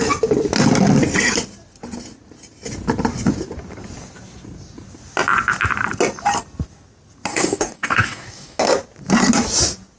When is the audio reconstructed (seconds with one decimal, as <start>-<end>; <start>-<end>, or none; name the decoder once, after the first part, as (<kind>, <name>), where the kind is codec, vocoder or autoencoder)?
7.3-8.6 (codec, DAC)